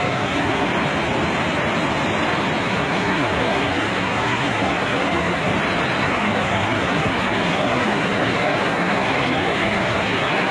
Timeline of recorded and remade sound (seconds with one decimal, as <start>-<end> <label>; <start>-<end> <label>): 0.0-0.7 remade; 0.7-2.6 recorded; 2.6-5.5 remade; 5.5-6.0 recorded; 6.0-10.5 remade